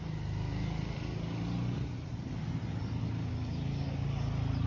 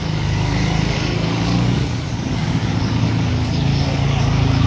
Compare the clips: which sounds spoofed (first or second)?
second